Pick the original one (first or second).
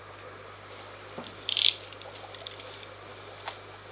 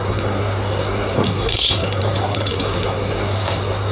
first